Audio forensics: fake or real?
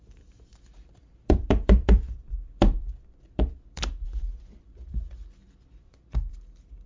fake